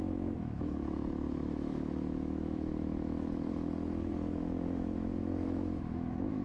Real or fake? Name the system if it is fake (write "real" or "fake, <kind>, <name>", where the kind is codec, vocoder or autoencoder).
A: fake, autoencoder, DAC-VAE